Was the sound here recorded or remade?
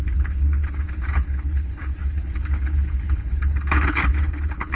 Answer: remade